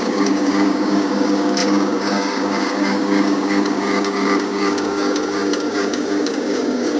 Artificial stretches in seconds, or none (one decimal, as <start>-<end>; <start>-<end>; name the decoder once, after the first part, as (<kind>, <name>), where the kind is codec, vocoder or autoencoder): 0.0-7.0 (codec, DAC)